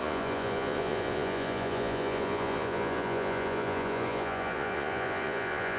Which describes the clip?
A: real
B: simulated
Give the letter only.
B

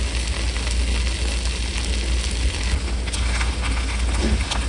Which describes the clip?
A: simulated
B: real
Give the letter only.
B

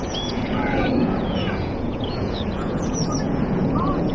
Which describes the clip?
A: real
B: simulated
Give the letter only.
B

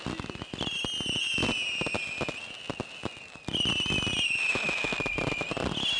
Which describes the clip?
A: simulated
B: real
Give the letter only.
B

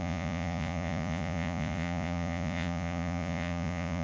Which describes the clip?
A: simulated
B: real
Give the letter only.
A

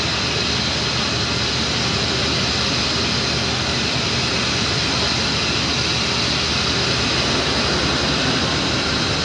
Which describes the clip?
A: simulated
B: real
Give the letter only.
B